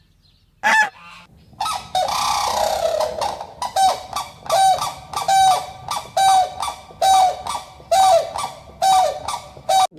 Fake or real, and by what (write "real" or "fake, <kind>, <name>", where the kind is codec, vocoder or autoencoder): real